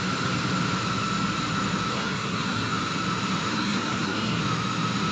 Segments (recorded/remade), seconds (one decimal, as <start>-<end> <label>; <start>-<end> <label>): 0.0-1.9 recorded; 1.9-2.7 remade; 2.7-3.5 recorded; 3.5-4.4 remade; 4.4-5.1 recorded